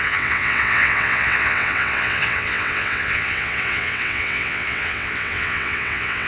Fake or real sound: fake